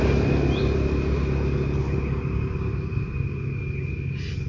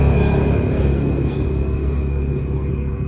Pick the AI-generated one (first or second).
second